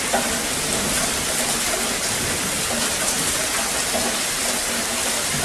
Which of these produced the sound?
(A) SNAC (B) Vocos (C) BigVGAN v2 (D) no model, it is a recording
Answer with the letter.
D